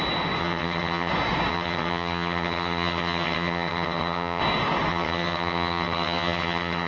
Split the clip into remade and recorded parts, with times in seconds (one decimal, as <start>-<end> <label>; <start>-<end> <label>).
0.0-0.4 recorded; 0.4-1.1 remade; 1.1-1.5 recorded; 1.5-4.4 remade; 4.4-4.9 recorded; 4.9-6.9 remade